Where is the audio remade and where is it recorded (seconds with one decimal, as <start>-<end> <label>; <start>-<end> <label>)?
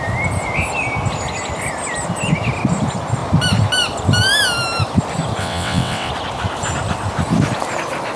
0.0-5.4 recorded; 5.4-6.1 remade; 6.1-8.2 recorded